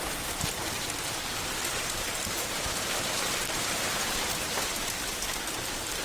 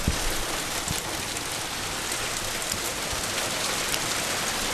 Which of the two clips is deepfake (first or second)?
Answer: first